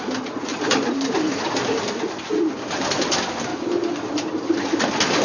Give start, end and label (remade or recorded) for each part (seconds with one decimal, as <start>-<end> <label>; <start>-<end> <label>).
0.0-5.2 recorded